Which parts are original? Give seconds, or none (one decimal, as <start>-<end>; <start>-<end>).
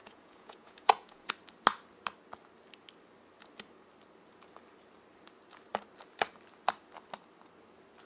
1.3-8.1